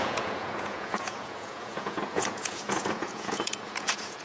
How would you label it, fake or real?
fake